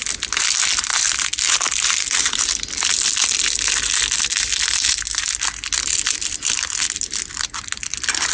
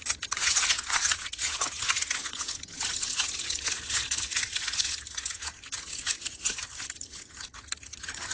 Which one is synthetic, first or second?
second